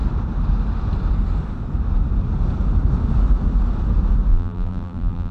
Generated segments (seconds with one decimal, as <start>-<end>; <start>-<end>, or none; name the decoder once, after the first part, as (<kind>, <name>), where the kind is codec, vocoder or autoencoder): 4.3-5.3 (vocoder, BigVGAN v2)